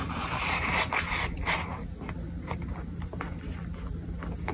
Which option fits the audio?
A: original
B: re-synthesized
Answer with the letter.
A